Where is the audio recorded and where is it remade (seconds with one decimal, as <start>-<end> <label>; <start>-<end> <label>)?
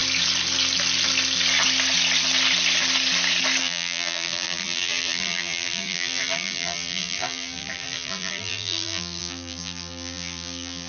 0.0-3.6 recorded; 3.6-10.9 remade